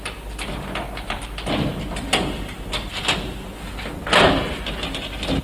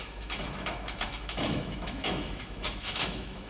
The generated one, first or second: second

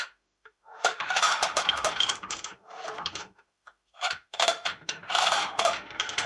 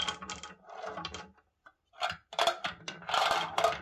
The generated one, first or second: first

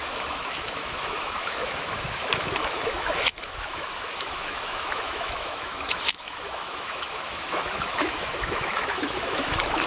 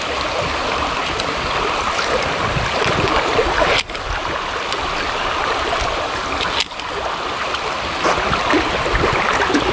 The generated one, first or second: first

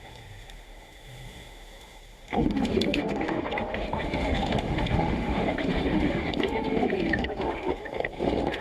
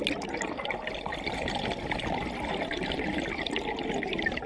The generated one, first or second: first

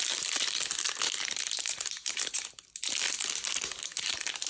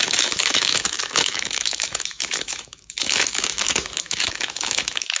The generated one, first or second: second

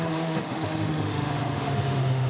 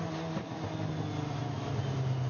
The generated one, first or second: first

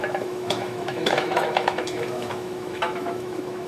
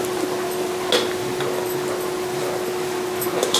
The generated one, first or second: first